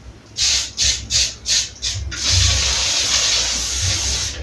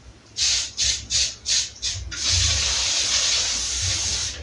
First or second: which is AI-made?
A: second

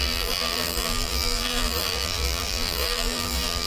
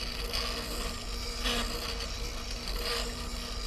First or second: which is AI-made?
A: first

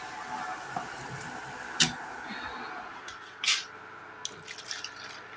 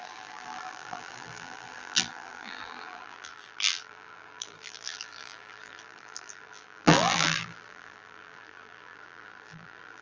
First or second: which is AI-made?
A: second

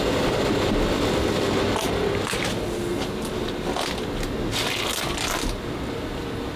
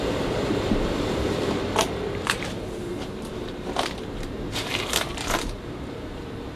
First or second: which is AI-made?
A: second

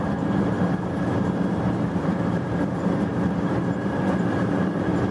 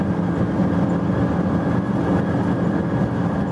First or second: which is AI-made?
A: first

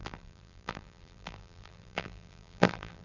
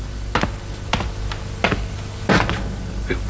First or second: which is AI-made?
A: first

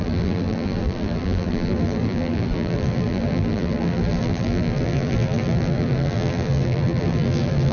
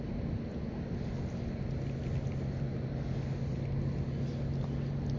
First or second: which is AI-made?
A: first